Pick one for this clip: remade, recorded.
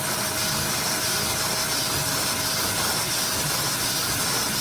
recorded